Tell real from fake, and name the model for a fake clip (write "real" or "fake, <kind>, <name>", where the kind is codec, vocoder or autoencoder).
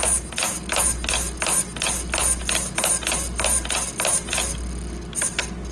real